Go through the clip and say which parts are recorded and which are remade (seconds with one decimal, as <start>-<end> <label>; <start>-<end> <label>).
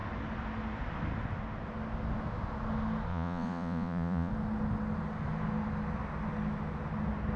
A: 0.0-3.1 recorded; 3.1-4.3 remade; 4.3-7.4 recorded